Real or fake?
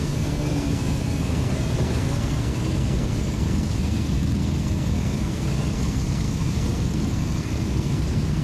fake